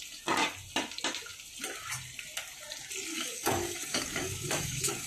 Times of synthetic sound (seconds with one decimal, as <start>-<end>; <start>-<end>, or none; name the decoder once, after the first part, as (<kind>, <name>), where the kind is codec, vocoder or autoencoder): 3.1-5.1 (codec, DAC)